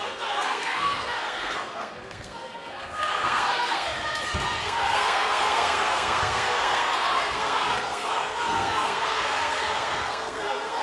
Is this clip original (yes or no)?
no